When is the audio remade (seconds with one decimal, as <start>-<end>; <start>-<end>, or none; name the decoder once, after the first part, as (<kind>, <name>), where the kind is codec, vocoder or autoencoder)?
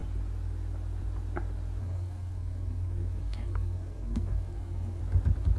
1.8-5.0 (codec, SNAC)